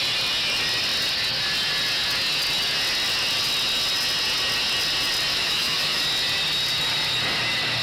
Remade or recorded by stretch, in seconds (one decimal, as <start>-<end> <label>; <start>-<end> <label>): 0.0-5.3 recorded; 5.3-6.0 remade; 6.0-7.8 recorded